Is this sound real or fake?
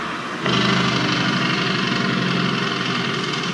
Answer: real